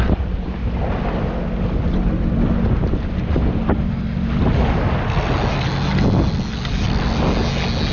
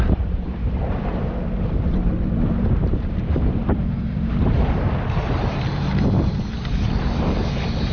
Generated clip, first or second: second